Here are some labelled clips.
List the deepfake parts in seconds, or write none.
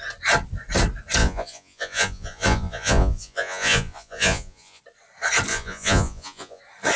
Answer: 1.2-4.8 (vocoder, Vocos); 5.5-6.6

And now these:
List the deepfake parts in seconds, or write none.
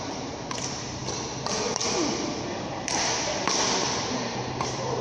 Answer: 0.0-1.0 (vocoder, BigVGAN v2); 4.0-5.0